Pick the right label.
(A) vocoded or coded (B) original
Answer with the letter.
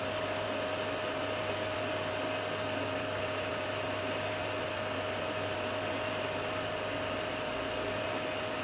B